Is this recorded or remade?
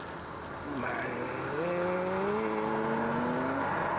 recorded